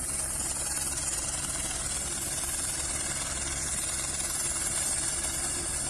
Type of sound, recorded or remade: remade